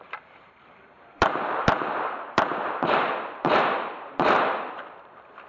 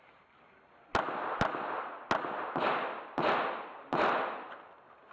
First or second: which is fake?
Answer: first